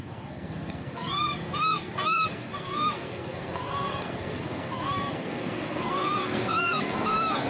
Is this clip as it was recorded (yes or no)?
no